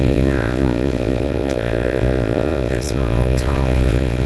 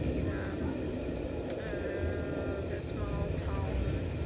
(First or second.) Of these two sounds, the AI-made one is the first